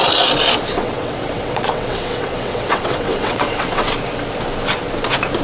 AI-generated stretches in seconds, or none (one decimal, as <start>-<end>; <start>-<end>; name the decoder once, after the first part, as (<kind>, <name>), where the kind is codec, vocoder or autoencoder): 0.7-3.9 (vocoder, WaveNeXt)